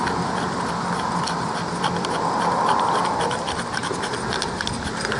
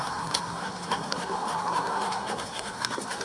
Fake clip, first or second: second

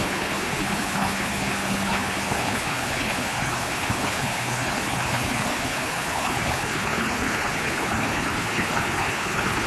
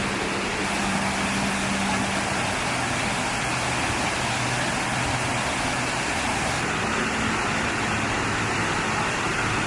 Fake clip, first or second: first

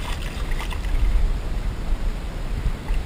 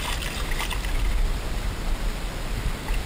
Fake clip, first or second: first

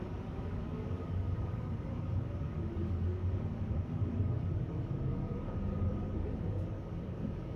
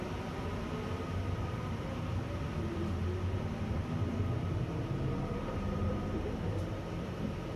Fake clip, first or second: first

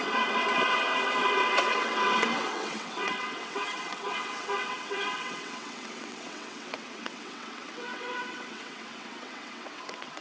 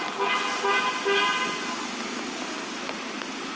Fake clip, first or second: first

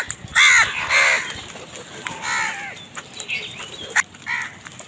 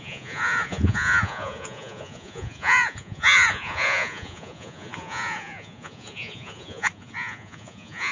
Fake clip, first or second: second